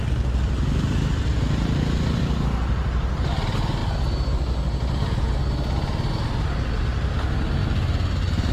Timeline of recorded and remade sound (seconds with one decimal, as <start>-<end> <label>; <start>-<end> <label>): 0.0-8.5 recorded